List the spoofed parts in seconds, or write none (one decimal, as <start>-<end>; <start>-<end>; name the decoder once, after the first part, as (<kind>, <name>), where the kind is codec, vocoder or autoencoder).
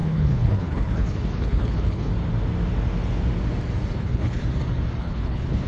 0.0-2.1 (codec, HILCodec); 3.9-4.4; 5.0-5.7